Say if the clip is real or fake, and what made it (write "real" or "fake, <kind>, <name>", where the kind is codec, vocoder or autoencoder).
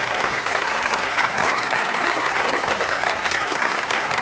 fake, codec, SNAC